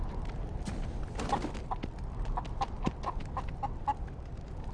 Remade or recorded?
recorded